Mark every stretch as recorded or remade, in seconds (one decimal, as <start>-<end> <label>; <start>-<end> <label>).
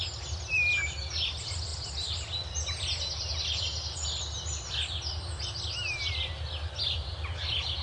0.0-7.8 recorded